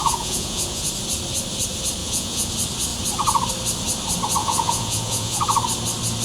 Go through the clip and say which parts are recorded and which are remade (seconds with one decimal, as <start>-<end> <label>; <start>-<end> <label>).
0.0-0.9 remade; 0.9-2.0 recorded; 2.0-2.5 remade; 2.5-4.4 recorded; 4.4-5.4 remade; 5.4-6.2 recorded